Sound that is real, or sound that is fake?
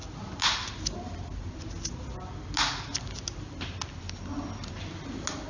real